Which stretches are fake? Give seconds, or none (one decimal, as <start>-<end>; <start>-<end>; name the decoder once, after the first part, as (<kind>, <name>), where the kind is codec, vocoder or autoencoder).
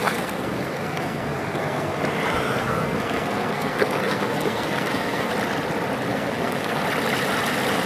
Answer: 0.0-2.0 (codec, SNAC); 2.6-5.3; 6.1-6.8